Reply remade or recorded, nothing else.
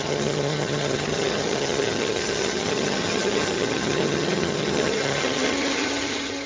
remade